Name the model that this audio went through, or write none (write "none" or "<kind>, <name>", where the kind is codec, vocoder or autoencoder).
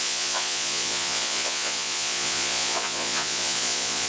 vocoder, Vocos